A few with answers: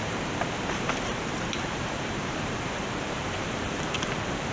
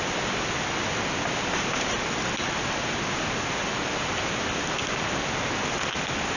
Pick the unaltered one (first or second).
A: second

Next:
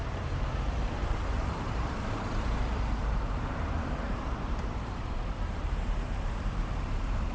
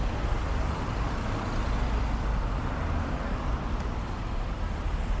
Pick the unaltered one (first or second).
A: second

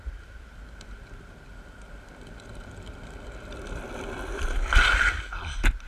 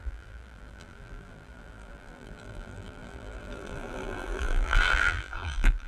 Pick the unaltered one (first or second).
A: first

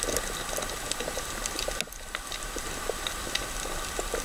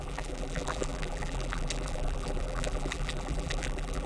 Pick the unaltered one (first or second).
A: first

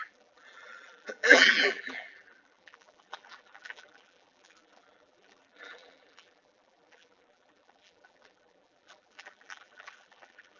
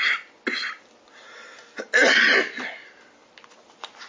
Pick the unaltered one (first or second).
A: second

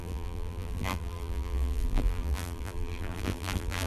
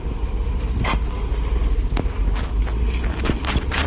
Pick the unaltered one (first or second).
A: second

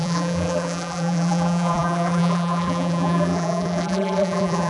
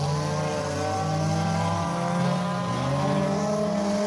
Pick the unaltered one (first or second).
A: second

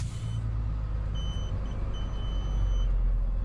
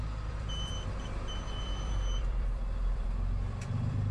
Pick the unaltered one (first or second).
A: first